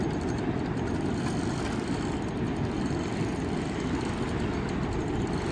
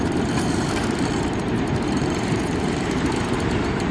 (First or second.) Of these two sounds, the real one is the first